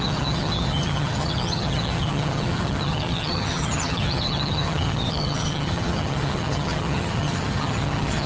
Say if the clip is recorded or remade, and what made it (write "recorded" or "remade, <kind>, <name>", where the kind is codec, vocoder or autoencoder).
remade, vocoder, HiFi-GAN